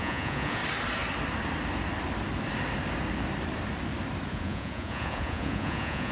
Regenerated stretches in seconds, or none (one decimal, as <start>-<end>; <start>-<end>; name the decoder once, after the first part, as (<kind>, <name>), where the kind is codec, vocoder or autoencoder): 0.0-0.6 (vocoder, Vocos); 4.3-6.1